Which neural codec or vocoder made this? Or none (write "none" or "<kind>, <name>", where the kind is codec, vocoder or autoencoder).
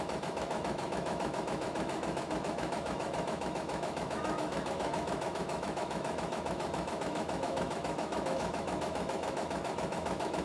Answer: autoencoder, DAC-VAE